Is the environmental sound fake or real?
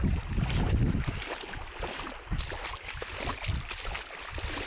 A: real